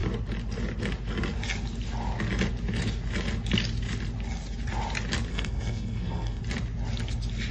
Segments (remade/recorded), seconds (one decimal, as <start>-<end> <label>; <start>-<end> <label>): 0.0-5.3 recorded; 5.3-6.4 remade; 6.4-7.5 recorded